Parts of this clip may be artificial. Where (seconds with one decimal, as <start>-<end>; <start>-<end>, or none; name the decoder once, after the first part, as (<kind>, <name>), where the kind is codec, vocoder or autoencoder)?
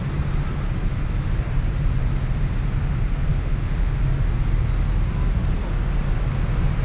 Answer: 3.3-4.0 (autoencoder, DAC-VAE)